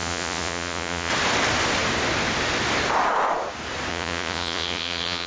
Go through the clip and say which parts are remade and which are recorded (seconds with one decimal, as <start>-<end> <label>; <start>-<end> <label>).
0.0-1.1 remade; 1.1-3.9 recorded; 3.9-5.3 remade